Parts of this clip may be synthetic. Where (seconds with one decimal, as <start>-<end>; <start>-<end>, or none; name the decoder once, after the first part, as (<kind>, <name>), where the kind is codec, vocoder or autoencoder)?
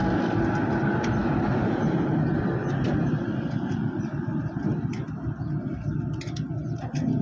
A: 1.2-4.5 (vocoder, BigVGAN v2)